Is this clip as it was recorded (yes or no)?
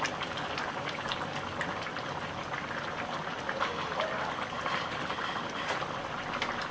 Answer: yes